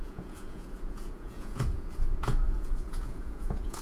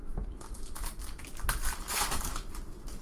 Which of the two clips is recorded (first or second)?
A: second